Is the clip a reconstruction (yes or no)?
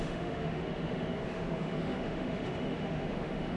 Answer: yes